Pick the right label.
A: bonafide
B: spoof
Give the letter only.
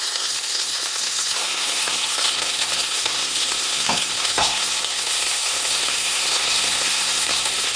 B